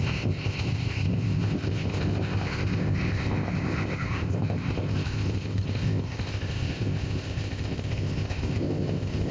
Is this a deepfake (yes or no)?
yes